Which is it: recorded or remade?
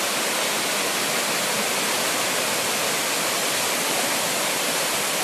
recorded